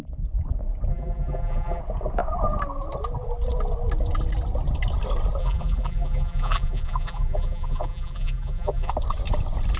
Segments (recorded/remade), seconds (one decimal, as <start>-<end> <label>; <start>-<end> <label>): 0.0-0.9 recorded; 0.9-1.8 remade; 1.8-5.4 recorded; 5.4-8.9 remade; 8.9-9.8 recorded

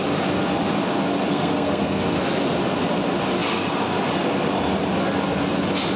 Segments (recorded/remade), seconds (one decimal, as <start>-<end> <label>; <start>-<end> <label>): 0.0-1.3 recorded; 1.3-2.2 remade; 2.2-6.0 recorded

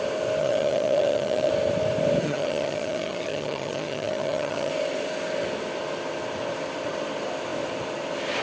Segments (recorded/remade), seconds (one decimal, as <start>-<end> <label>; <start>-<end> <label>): 0.0-0.4 recorded; 0.4-1.5 remade; 1.5-2.2 recorded; 2.2-4.7 remade; 4.7-8.4 recorded